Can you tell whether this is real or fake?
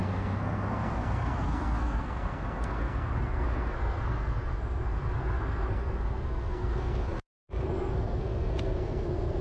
fake